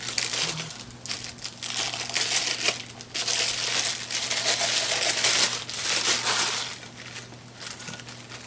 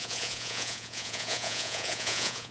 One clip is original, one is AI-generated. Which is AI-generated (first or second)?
second